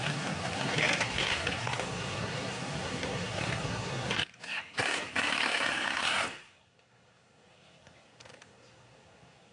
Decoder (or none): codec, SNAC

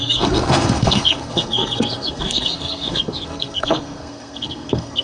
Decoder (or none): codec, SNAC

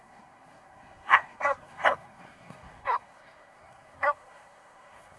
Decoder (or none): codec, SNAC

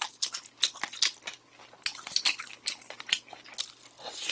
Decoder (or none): none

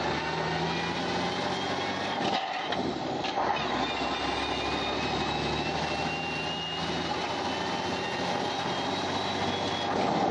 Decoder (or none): none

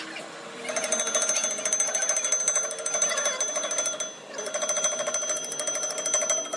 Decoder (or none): none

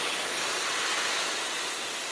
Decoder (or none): none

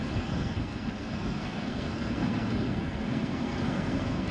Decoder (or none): codec, SNAC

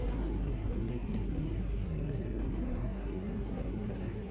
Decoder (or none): codec, SNAC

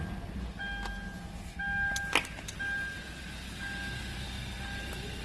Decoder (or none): none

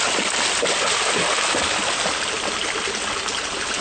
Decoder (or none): none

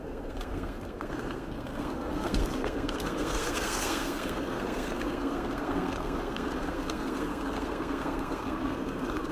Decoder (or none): codec, SNAC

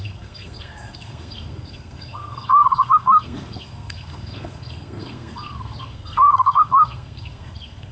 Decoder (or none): codec, SNAC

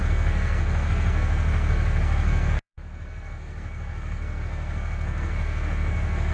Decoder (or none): codec, SNAC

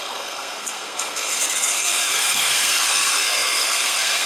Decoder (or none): codec, SNAC